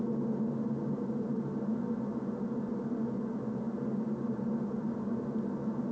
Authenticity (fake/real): real